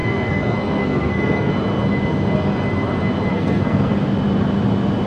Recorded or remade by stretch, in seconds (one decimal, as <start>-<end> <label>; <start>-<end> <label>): 0.0-1.5 remade; 1.5-3.3 recorded; 3.3-3.9 remade; 3.9-5.1 recorded